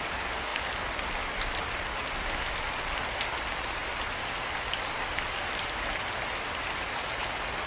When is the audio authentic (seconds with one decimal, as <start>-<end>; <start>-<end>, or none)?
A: 0.0-7.7